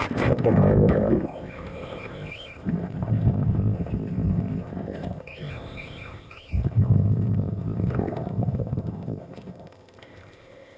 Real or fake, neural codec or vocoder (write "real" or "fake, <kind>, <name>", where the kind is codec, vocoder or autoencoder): fake, codec, ZipCodec